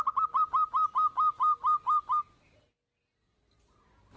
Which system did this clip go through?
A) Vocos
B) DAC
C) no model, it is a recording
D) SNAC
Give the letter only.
C